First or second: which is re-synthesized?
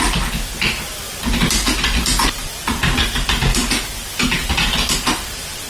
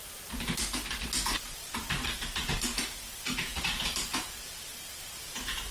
second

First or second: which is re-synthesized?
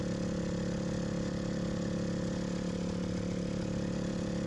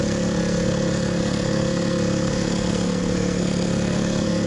second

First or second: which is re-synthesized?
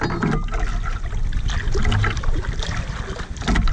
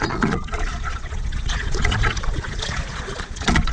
second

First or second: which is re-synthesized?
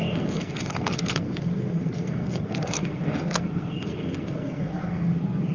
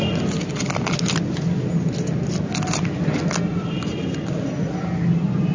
first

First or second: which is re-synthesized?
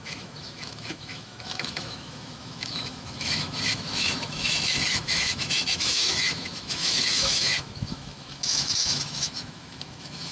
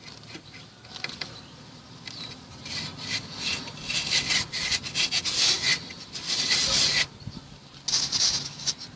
first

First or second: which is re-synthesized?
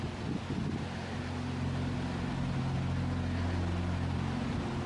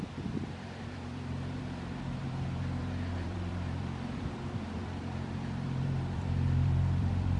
second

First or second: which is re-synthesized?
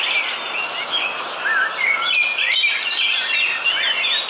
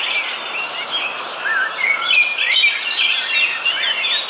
second